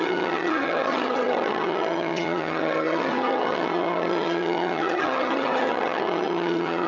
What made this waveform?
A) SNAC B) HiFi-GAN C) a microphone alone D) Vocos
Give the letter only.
B